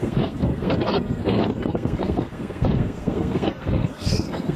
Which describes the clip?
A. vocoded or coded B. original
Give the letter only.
A